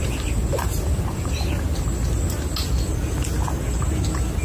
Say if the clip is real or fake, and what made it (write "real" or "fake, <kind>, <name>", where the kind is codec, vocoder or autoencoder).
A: real